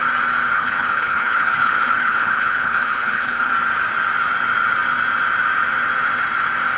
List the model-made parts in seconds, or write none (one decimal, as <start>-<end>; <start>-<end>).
0.5-3.5